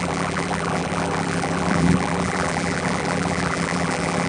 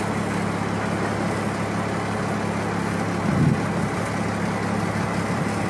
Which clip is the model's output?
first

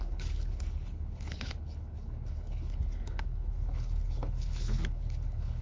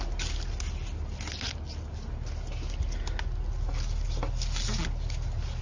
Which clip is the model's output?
first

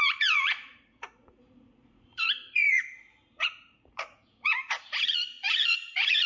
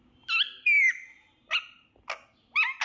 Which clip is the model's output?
first